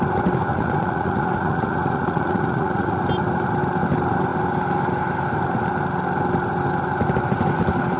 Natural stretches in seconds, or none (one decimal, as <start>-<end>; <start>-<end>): 0.0-0.5; 3.0-8.0